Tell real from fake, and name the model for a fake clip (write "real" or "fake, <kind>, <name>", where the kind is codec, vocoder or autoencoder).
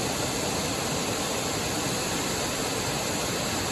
real